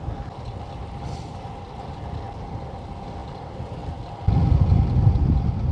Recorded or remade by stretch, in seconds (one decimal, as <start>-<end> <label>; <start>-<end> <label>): 0.0-5.7 recorded